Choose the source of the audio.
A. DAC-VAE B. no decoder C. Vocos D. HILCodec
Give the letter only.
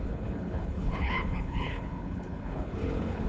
D